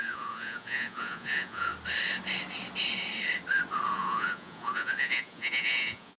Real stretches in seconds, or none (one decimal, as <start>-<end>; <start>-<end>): 1.7-3.9